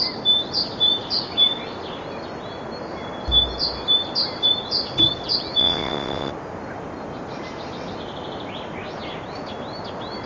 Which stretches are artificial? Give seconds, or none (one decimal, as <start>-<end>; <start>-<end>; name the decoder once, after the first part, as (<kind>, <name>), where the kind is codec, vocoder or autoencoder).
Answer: 5.6-6.3 (vocoder, WaveNeXt)